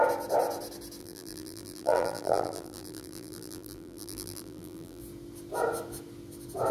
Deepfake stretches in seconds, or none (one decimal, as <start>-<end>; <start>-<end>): 1.0-5.0